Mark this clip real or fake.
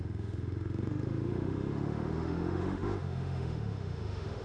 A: fake